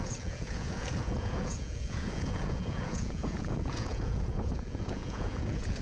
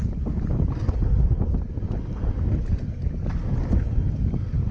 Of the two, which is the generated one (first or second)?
first